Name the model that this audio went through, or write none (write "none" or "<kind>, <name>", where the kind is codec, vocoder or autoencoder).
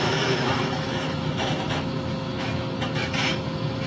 autoencoder, DAC-VAE